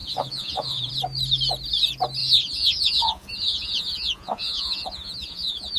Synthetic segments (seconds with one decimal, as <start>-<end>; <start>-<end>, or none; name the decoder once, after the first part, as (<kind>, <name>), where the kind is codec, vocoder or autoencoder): 0.0-0.9 (vocoder, Vocos); 2.2-5.8

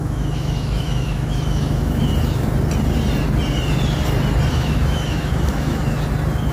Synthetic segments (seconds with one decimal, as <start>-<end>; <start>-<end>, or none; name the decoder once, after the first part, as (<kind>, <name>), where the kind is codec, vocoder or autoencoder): 0.0-2.1 (autoencoder, DAC-VAE); 4.5-5.8

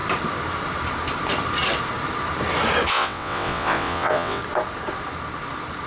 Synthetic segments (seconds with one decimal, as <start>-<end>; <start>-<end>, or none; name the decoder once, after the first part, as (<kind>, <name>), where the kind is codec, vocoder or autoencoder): 2.9-4.4 (vocoder, WaveNeXt)

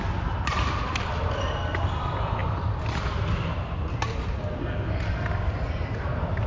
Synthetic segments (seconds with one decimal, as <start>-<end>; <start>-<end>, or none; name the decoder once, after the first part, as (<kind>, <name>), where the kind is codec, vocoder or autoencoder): none

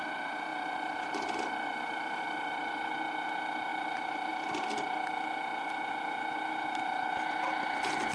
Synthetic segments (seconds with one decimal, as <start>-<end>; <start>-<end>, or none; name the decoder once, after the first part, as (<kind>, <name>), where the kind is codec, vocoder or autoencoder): 0.5-2.9 (vocoder, BigVGAN v2); 3.7-4.3

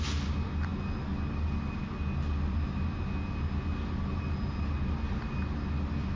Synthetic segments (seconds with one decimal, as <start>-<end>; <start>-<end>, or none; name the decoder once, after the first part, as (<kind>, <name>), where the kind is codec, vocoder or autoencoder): none

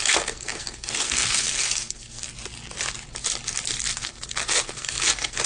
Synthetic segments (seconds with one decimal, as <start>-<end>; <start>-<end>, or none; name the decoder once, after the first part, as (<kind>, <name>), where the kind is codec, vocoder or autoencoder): 0.0-2.3 (codec, SNAC); 3.9-5.5

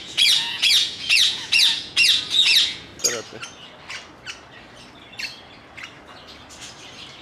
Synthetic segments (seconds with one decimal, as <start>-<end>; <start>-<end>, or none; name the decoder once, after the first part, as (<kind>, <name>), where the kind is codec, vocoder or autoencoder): 0.0-2.9 (vocoder, Vocos)